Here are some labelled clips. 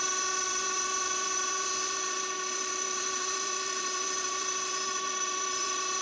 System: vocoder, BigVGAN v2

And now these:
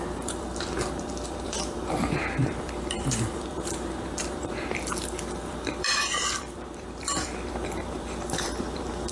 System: vocoder, BigVGAN v2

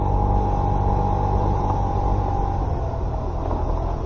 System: none